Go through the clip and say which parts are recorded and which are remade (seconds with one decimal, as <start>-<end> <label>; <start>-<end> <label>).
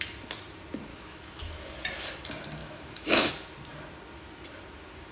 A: 0.0-0.9 recorded; 0.9-1.7 remade; 1.7-2.6 recorded; 2.6-3.3 remade; 3.3-5.1 recorded